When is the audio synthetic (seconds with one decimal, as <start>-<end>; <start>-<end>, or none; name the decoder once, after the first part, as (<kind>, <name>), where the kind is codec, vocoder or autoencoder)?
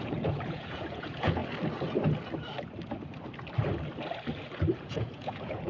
0.0-1.4 (vocoder, Vocos); 4.8-5.7